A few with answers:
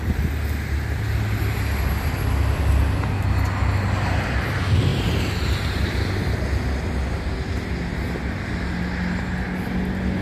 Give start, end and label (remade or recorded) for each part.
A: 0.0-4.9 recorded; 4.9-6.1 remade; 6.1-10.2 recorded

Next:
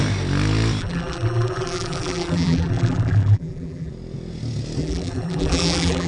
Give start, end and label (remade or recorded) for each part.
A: 0.0-0.8 recorded; 0.8-3.9 remade; 3.9-4.8 recorded; 4.8-6.1 remade